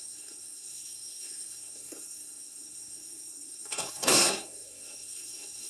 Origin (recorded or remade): remade